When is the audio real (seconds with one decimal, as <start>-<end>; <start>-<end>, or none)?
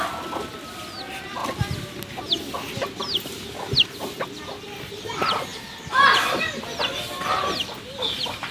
0.0-8.5